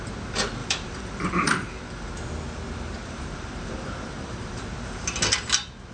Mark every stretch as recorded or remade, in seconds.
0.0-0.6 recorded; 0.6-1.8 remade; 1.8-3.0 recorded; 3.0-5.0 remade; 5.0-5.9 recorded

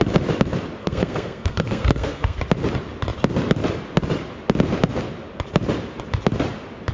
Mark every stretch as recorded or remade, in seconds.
0.0-0.8 recorded; 0.8-2.4 remade; 2.4-6.9 recorded

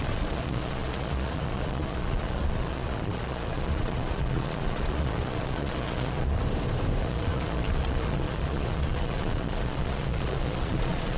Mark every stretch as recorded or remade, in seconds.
0.0-6.4 remade; 6.4-7.0 recorded; 7.0-11.2 remade

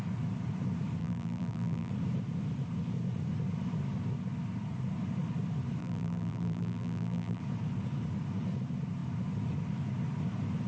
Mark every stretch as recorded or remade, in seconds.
0.0-1.0 recorded; 1.0-1.9 remade; 1.9-5.8 recorded; 5.8-7.4 remade; 7.4-10.7 recorded

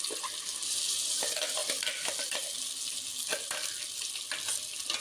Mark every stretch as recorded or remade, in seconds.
0.0-5.0 recorded

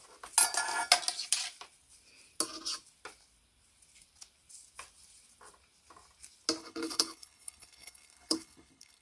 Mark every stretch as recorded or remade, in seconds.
0.0-6.6 recorded; 6.6-9.0 remade

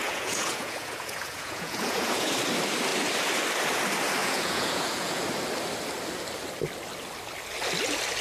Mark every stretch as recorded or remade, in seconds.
0.0-2.3 remade; 2.3-4.2 recorded; 4.2-5.2 remade; 5.2-8.2 recorded